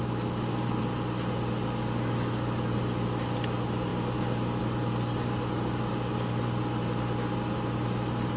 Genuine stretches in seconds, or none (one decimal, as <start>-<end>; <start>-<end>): 0.0-8.4